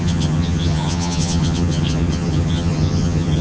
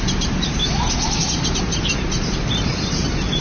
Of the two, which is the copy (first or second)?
first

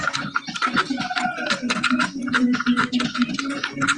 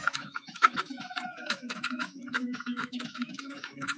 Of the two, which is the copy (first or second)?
second